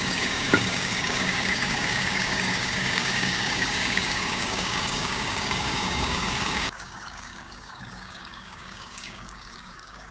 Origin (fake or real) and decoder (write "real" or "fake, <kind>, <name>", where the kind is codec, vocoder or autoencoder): fake, codec, DAC